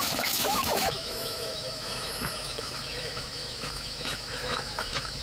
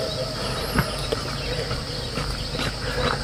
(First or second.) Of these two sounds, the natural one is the second